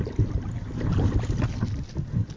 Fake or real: real